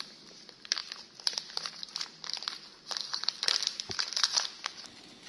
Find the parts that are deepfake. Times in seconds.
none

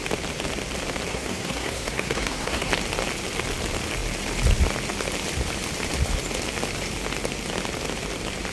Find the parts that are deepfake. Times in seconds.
1.1-2.7 (codec, SNAC)

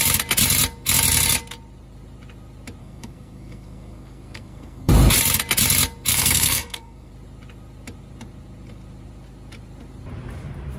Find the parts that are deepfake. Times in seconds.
2.8-4.9 (codec, SNAC); 6.1-7.1

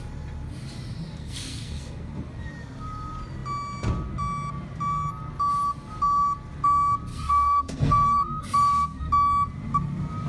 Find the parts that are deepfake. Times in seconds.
1.2-2.2 (codec, SNAC); 7.1-9.1

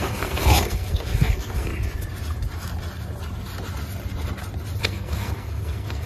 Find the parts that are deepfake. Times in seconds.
0.0-1.7 (codec, SNAC); 4.8-6.1

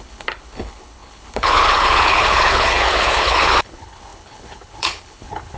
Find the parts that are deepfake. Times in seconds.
0.0-5.6 (codec, HILCodec)

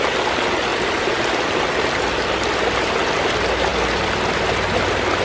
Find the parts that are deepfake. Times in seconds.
none

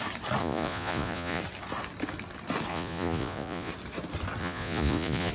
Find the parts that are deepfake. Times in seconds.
0.4-1.4 (vocoder, Vocos); 2.7-3.7; 4.4-5.3